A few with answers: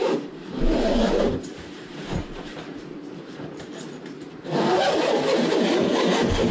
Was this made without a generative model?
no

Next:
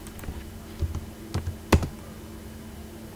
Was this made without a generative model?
yes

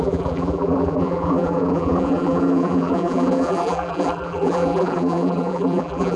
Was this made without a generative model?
no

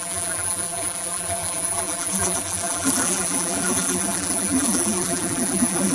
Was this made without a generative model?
no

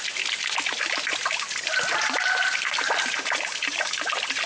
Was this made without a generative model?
yes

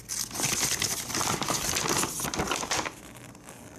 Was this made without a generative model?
yes